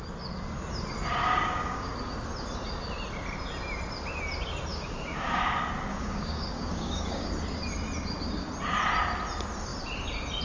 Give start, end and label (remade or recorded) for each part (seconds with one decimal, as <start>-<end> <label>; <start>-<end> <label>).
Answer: 0.0-1.2 recorded; 1.2-2.1 remade; 2.1-4.7 recorded; 4.7-5.4 remade; 5.4-5.9 recorded; 5.9-7.3 remade; 7.3-10.4 recorded